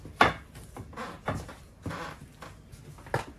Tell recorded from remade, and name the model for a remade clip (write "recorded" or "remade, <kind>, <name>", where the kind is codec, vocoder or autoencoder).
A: recorded